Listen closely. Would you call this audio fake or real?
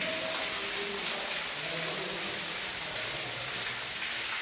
real